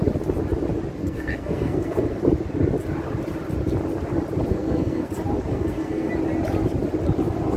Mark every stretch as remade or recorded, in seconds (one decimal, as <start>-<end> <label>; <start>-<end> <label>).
0.0-1.0 recorded; 1.0-2.2 remade; 2.2-4.5 recorded; 4.5-5.1 remade; 5.1-5.5 recorded; 5.5-6.1 remade; 6.1-7.6 recorded